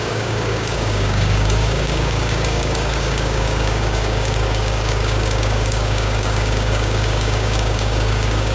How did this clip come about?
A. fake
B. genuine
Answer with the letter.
A